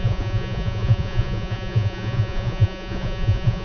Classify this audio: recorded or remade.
remade